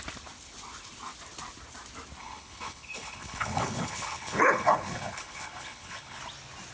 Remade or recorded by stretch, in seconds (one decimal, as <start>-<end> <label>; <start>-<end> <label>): 0.0-2.2 recorded; 2.2-6.2 remade; 6.2-6.7 recorded